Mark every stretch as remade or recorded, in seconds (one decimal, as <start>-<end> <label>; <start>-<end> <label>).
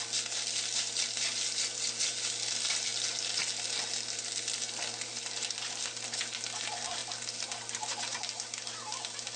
0.0-9.4 recorded